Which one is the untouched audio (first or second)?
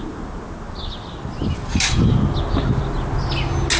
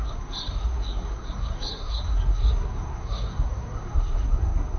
first